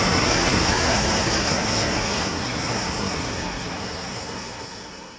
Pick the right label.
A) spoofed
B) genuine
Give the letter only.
A